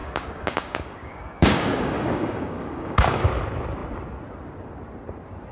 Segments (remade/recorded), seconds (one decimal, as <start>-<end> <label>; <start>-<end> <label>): 0.0-3.3 remade; 3.3-5.5 recorded